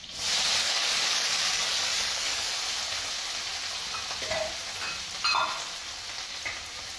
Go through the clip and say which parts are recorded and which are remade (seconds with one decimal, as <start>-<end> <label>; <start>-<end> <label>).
0.0-0.6 recorded; 0.6-2.5 remade; 2.5-7.0 recorded